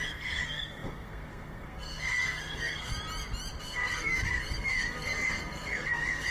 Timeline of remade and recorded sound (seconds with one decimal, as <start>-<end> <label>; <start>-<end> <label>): 0.0-2.9 remade; 2.9-3.6 recorded; 3.6-6.3 remade